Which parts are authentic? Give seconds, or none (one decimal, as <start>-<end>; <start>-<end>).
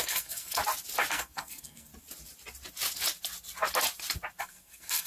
0.6-1.1; 1.9-4.4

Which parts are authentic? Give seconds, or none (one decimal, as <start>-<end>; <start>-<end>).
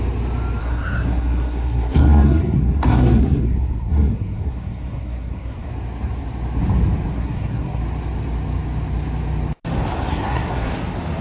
0.0-0.6; 5.7-7.1; 7.8-10.1; 10.7-11.2